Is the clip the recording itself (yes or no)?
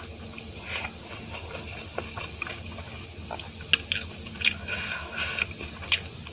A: yes